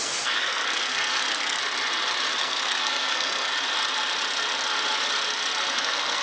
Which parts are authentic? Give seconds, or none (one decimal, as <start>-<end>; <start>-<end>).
1.6-2.4; 3.5-5.7